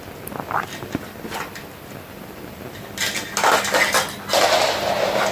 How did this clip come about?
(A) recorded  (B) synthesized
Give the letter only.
A